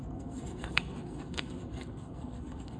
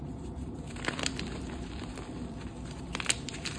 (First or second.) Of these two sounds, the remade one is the first